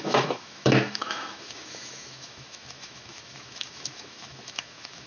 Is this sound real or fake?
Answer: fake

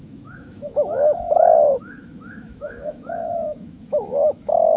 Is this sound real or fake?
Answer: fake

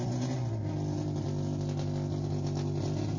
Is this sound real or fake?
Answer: real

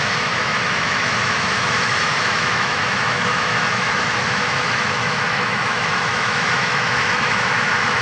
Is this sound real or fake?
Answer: fake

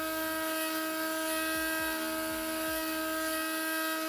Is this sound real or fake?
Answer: real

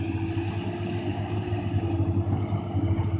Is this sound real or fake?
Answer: real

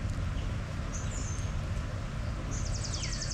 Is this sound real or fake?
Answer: real